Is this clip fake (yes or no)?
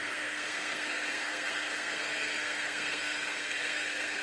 yes